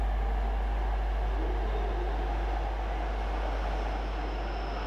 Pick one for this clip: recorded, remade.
recorded